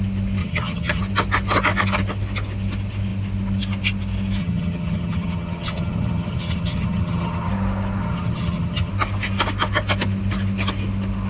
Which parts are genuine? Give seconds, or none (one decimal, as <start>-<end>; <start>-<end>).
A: 0.0-0.4; 1.0-4.4; 7.5-8.0; 8.9-11.3